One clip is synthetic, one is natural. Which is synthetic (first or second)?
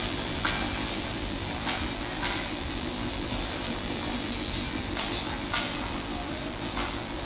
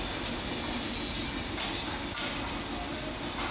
first